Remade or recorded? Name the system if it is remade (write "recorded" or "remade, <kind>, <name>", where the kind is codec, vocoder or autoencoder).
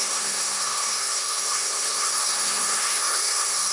remade, codec, SNAC